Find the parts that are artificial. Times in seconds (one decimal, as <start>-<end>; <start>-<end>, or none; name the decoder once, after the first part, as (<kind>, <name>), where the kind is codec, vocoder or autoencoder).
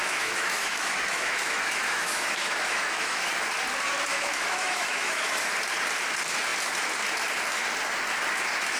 0.0-3.3 (autoencoder, DAC-VAE); 4.1-5.5